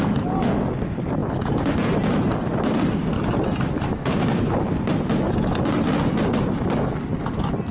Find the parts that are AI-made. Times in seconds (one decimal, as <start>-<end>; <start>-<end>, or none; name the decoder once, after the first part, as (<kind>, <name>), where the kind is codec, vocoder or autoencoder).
none